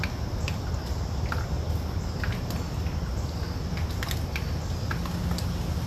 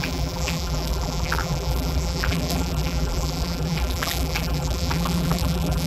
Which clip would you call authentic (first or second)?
first